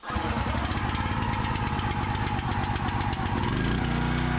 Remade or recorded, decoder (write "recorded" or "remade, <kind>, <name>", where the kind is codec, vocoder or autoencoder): recorded